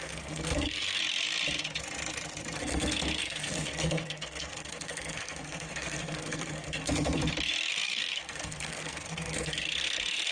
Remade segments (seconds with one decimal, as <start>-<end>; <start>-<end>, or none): 0.0-1.0; 2.6-7.2; 7.7-10.3